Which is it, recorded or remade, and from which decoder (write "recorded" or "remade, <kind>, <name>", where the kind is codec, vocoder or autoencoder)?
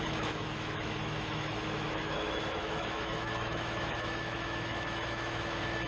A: remade, autoencoder, DAC-VAE